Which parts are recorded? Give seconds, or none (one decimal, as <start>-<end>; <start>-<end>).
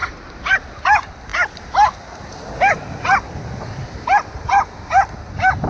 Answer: 0.6-5.7